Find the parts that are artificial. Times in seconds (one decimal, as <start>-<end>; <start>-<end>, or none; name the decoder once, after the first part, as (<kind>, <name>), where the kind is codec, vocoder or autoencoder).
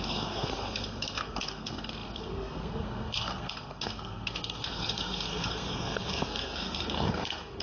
0.0-7.6 (codec, SNAC)